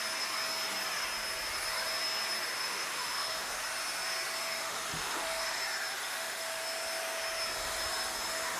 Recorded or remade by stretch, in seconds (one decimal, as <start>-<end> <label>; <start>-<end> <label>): 0.0-2.6 recorded; 2.6-3.5 remade; 3.5-4.4 recorded; 4.4-5.6 remade; 5.6-6.0 recorded; 6.0-6.6 remade; 6.6-8.6 recorded